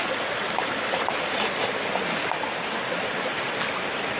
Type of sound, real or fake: fake